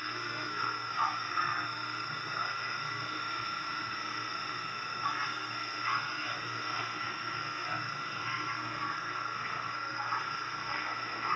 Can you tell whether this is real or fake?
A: fake